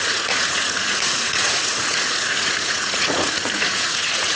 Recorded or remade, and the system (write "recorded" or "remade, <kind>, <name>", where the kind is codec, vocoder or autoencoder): remade, vocoder, Vocos